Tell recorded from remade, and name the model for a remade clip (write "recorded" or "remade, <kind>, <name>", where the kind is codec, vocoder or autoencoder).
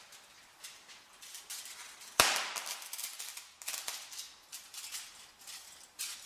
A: recorded